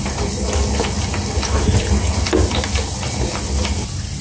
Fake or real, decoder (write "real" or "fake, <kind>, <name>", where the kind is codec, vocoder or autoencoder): real